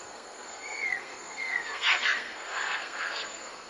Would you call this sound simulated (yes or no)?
yes